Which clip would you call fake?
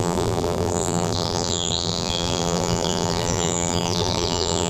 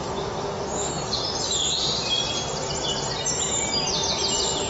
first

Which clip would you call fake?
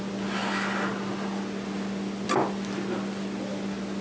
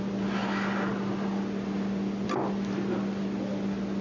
second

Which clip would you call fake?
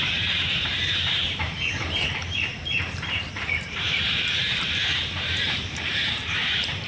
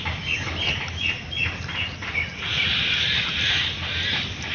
first